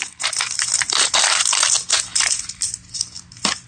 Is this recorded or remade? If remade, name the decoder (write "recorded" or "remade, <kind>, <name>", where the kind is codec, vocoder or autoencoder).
recorded